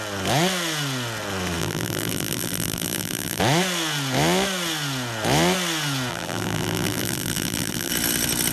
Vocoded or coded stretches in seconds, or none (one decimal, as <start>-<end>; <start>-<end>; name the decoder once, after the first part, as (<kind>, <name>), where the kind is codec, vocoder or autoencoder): 1.6-3.4 (vocoder, BigVGAN v2); 6.1-7.9